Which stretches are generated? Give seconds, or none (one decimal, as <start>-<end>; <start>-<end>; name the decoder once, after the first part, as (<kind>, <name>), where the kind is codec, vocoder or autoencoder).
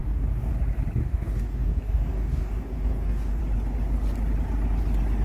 0.0-0.5 (codec, DAC); 1.0-3.4